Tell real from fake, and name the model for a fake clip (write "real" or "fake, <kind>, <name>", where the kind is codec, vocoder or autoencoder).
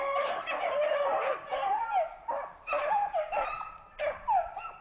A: fake, vocoder, BigVGAN v2